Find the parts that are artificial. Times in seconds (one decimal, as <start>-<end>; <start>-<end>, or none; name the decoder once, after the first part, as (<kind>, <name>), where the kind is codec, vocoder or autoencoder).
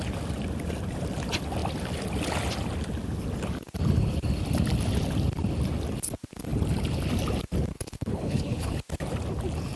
7.7-8.7 (codec, HILCodec)